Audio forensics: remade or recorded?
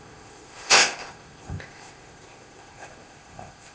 remade